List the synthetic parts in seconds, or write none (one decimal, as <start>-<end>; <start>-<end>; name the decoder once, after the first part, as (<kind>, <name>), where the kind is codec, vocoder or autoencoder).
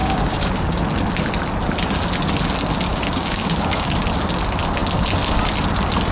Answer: 0.0-0.8 (codec, DAC); 2.9-4.0